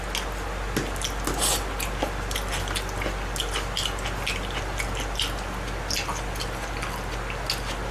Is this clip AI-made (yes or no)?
no